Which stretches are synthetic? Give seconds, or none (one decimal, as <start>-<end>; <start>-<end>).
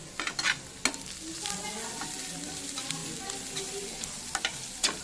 2.2-3.0; 4.4-5.0